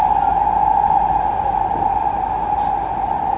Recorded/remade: recorded